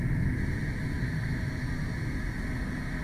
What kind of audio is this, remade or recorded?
recorded